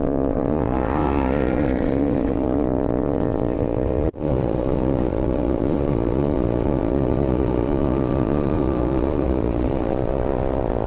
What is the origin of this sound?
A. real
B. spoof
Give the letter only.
B